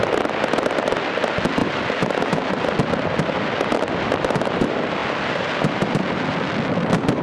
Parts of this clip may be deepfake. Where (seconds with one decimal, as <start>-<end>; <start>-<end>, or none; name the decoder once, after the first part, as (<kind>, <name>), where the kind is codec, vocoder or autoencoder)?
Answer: none

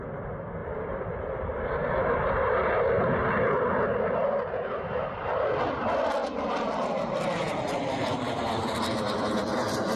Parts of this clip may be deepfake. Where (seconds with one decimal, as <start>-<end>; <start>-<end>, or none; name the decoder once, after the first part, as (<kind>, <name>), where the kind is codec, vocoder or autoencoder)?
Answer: 0.6-2.0 (vocoder, BigVGAN v2); 6.2-10.0

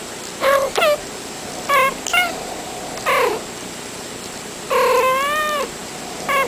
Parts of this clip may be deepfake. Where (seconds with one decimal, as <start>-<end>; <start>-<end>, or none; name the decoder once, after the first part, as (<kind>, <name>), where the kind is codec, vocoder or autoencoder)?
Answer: none